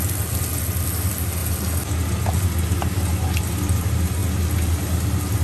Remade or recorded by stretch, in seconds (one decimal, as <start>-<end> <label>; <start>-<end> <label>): 0.0-5.4 recorded

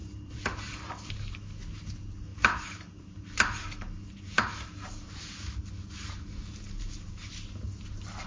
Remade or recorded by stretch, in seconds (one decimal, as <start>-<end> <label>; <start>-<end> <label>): 0.0-1.1 remade; 1.1-2.3 recorded; 2.3-7.3 remade; 7.3-8.3 recorded

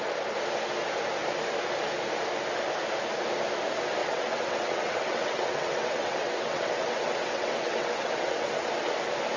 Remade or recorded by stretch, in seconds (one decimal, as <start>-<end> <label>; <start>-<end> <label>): 0.0-4.0 recorded; 4.0-8.7 remade; 8.7-9.4 recorded

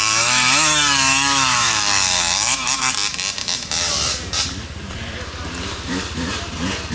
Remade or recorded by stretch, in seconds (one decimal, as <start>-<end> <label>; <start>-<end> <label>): 0.0-2.9 remade; 2.9-3.4 recorded; 3.4-3.9 remade; 3.9-6.9 recorded